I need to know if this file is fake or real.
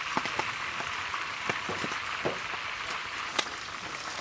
real